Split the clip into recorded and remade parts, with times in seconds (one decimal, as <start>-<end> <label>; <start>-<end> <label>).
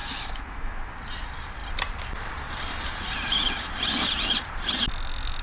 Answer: 0.0-0.9 remade; 0.9-5.4 recorded